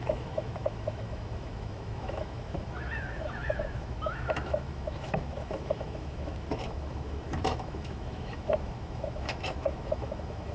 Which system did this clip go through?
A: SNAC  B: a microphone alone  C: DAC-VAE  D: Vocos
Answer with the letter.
C